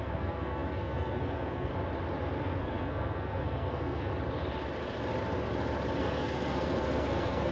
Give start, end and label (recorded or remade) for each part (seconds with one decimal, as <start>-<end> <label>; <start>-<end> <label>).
0.0-1.7 remade; 1.7-2.4 recorded; 2.4-4.1 remade; 4.1-6.0 recorded; 6.0-7.5 remade